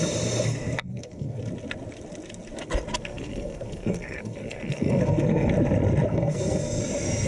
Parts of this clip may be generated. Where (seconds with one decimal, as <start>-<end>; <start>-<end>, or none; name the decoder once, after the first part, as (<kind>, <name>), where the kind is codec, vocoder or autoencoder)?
0.8-1.4 (codec, SNAC); 3.1-5.5; 6.1-6.8